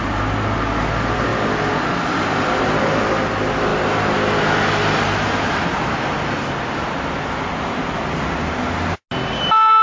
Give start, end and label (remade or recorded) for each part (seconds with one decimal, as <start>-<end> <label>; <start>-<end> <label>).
0.0-9.8 recorded

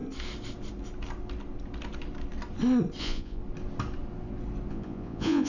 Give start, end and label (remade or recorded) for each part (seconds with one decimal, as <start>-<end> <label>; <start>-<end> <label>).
0.0-3.0 recorded; 3.0-3.4 remade; 3.4-4.7 recorded; 4.7-5.5 remade

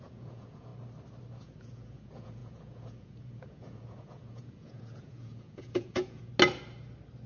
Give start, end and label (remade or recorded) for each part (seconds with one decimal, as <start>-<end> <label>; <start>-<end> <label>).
0.0-0.7 remade; 0.7-1.4 recorded; 1.4-6.3 remade; 6.3-7.3 recorded

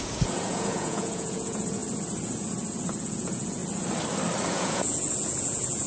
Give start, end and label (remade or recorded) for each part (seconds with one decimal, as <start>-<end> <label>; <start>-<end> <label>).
0.0-1.8 remade; 1.8-3.0 recorded; 3.0-3.6 remade; 3.6-4.5 recorded; 4.5-5.9 remade

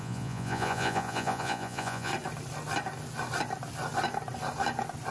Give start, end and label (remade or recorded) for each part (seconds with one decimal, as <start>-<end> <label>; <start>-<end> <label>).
0.0-2.1 remade; 2.1-5.1 recorded

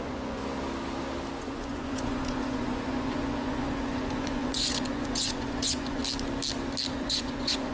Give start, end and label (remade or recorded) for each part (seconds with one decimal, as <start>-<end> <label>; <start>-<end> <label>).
0.0-0.4 remade; 0.4-1.4 recorded; 1.4-6.0 remade; 6.0-6.9 recorded; 6.9-7.7 remade

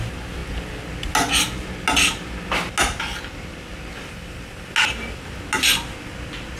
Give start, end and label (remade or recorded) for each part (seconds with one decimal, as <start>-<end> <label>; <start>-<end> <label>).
0.0-6.6 recorded